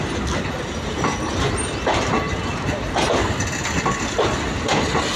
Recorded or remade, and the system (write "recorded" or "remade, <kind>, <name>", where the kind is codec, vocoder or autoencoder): recorded